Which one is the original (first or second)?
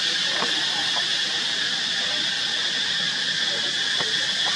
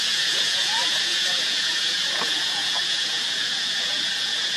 first